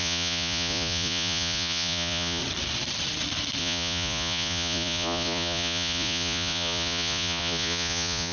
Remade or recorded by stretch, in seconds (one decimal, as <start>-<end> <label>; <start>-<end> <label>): 0.0-2.4 remade; 2.4-3.6 recorded; 3.6-8.3 remade